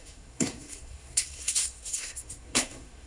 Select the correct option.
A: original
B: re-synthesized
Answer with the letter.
B